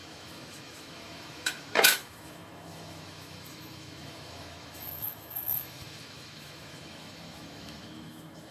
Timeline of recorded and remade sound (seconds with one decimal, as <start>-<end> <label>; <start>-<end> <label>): 0.0-8.5 remade